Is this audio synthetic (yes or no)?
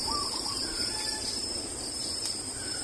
yes